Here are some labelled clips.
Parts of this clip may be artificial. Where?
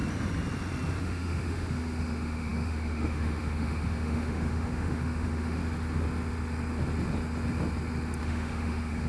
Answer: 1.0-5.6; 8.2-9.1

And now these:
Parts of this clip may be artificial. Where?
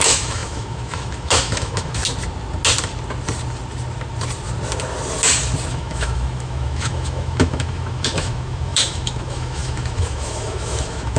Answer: 0.0-2.0; 5.7-11.2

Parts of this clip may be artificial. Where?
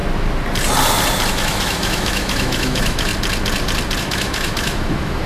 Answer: 1.3-3.1; 4.0-5.3